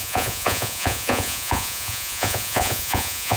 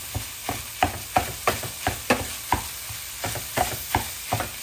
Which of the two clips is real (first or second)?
second